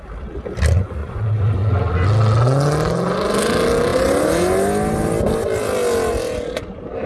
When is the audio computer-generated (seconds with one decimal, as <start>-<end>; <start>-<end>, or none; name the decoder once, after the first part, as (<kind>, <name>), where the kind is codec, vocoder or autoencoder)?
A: 1.0-1.7 (vocoder, Vocos)